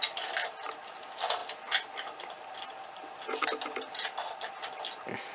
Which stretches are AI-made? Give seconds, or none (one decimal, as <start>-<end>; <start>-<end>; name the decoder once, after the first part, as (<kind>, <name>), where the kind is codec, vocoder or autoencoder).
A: none